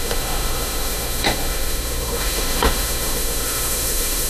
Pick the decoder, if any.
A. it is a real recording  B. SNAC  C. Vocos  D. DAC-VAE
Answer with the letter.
D